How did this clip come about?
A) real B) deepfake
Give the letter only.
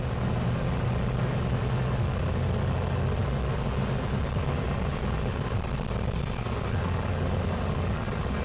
A